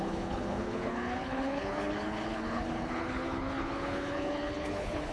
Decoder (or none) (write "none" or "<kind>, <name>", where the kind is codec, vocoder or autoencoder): codec, HILCodec